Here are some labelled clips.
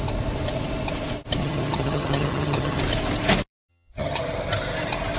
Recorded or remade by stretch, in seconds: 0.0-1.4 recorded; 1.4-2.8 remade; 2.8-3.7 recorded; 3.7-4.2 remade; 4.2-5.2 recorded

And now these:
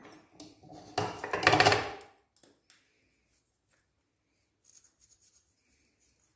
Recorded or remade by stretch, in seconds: 0.0-6.4 recorded

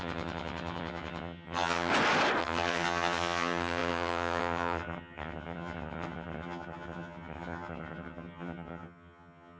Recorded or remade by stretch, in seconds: 0.0-1.9 remade; 1.9-2.4 recorded; 2.4-9.6 remade

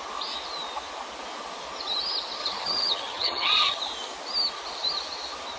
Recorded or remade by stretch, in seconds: 0.0-2.4 recorded; 2.4-3.8 remade; 3.8-5.6 recorded

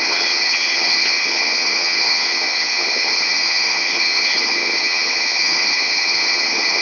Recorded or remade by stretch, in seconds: 0.0-6.8 remade